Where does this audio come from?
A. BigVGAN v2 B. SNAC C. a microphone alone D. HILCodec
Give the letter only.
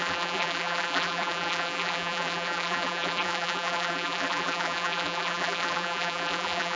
A